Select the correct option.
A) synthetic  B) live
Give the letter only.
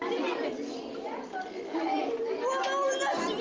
B